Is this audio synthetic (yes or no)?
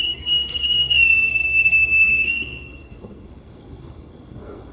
yes